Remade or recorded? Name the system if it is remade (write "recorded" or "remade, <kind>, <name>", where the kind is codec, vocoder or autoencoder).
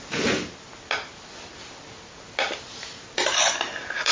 recorded